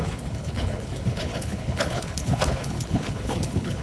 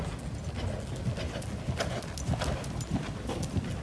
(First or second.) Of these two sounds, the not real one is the first